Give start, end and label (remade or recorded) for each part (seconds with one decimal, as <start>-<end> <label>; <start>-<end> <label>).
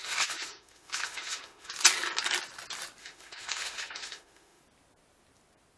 0.0-1.7 remade; 1.7-3.0 recorded; 3.0-4.6 remade; 4.6-5.8 recorded